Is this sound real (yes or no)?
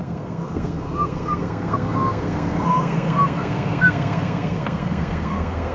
no